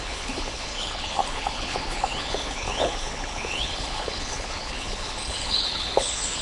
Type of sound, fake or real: fake